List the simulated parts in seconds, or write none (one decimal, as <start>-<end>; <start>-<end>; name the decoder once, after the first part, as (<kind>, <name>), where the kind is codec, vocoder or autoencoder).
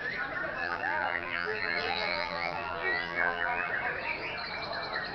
0.6-3.7 (vocoder, BigVGAN v2)